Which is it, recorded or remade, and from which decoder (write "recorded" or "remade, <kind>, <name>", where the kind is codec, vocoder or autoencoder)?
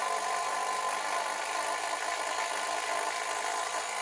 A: recorded